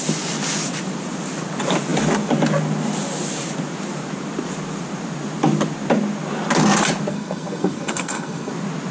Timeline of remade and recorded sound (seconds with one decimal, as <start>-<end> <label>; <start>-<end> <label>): 0.0-7.1 recorded; 7.1-8.5 remade; 8.5-8.9 recorded